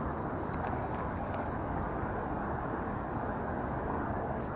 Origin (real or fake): fake